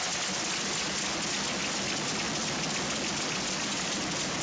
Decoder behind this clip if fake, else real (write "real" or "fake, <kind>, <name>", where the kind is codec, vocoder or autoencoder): real